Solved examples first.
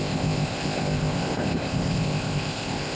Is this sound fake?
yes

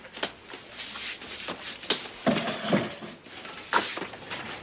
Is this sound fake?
no